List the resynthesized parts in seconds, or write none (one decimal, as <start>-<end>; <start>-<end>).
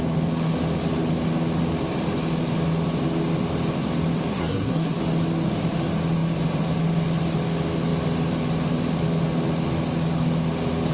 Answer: 4.3-5.0